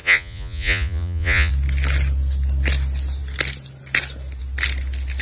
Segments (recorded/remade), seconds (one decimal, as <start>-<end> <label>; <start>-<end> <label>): 0.0-1.5 remade; 1.5-5.2 recorded